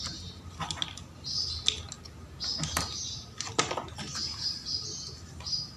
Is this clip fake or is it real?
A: real